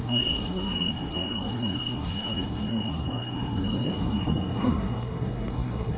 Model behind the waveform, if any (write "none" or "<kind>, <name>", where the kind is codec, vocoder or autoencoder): codec, SNAC